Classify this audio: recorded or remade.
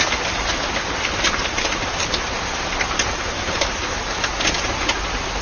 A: recorded